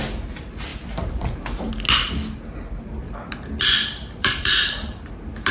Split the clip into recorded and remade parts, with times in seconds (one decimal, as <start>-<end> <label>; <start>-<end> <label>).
0.0-0.7 recorded; 0.7-1.7 remade; 1.7-4.2 recorded; 4.2-5.1 remade; 5.1-5.5 recorded